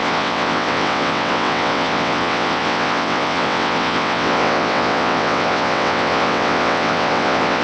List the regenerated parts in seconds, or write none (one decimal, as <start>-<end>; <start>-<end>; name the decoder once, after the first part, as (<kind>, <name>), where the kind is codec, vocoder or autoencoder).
0.0-7.6 (vocoder, WaveNeXt)